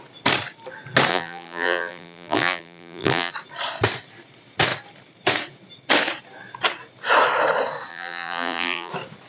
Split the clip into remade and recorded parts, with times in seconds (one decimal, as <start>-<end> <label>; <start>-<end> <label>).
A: 0.0-1.1 recorded; 1.1-3.3 remade; 3.3-7.9 recorded; 7.9-8.9 remade; 8.9-9.3 recorded